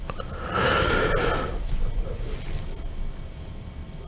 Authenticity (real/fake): real